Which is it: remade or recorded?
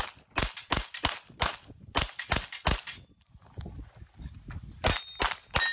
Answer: recorded